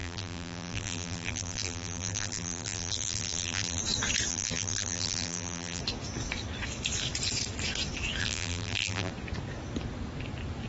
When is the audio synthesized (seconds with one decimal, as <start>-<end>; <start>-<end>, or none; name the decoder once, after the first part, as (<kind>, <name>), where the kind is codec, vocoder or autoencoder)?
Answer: 0.0-3.8 (vocoder, BigVGAN v2); 4.3-5.8; 8.2-9.1